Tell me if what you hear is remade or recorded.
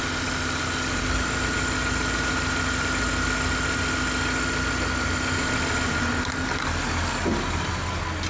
recorded